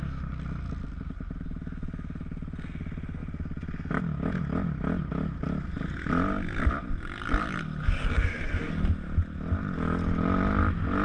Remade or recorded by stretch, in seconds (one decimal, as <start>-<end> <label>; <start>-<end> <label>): 0.0-7.8 recorded; 7.8-8.7 remade; 8.7-11.0 recorded